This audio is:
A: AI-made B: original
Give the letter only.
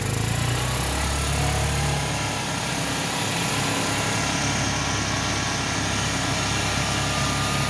B